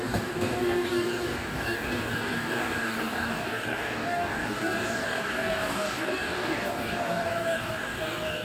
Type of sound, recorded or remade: remade